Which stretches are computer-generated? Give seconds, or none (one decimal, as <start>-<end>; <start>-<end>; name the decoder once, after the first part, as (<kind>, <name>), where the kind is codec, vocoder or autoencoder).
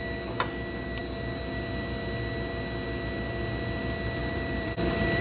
4.2-5.2 (vocoder, BigVGAN v2)